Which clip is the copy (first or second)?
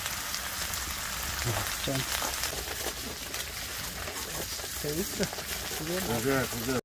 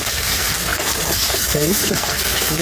second